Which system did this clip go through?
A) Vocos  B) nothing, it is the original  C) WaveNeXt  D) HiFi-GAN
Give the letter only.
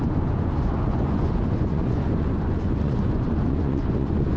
A